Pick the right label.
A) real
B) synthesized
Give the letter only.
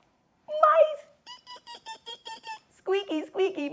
B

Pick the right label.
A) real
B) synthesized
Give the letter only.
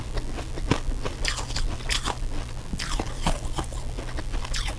A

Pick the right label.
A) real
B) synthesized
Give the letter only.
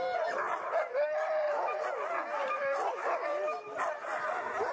B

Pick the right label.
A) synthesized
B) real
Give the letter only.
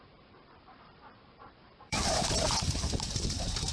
A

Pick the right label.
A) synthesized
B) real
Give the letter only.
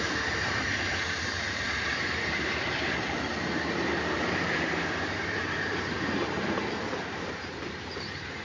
A